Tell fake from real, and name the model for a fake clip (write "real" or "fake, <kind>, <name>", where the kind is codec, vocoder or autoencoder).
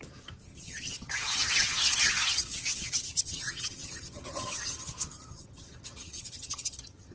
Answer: fake, vocoder, HiFi-GAN